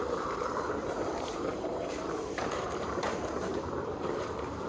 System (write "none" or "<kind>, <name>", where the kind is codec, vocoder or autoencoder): vocoder, BigVGAN v2